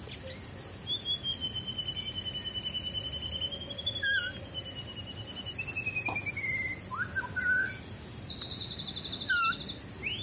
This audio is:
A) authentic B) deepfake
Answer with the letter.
A